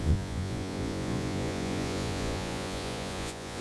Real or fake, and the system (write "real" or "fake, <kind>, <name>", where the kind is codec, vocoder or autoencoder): fake, vocoder, Vocos